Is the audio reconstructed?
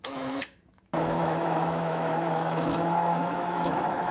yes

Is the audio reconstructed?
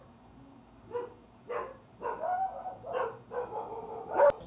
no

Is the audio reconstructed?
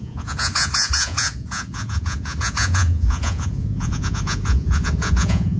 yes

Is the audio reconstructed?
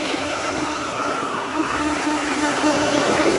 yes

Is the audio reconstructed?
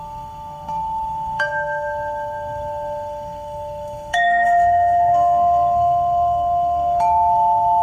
yes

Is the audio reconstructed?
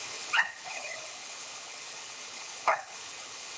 yes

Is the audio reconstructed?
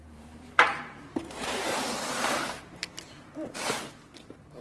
yes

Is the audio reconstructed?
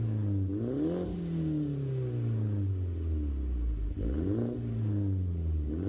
no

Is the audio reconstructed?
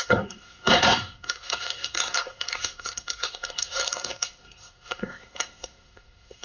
yes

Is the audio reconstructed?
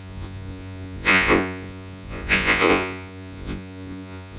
yes